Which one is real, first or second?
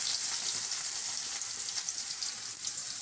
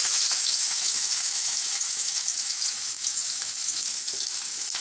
first